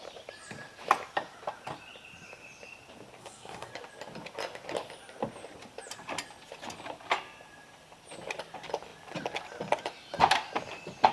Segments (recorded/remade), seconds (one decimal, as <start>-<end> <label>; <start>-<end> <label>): 0.0-3.2 recorded; 3.2-3.7 remade; 3.7-11.1 recorded